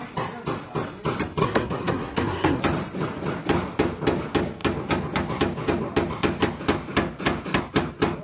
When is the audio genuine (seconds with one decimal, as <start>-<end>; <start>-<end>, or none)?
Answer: 0.0-1.4; 2.6-8.2